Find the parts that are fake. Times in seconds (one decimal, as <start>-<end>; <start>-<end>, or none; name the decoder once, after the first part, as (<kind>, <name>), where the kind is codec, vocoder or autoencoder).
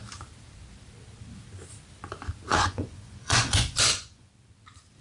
2.5-4.3 (vocoder, Vocos)